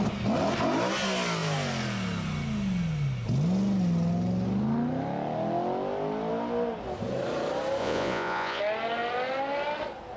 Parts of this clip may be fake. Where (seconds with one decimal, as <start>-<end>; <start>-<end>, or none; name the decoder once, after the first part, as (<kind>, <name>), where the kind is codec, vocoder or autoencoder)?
7.8-8.6 (vocoder, Vocos)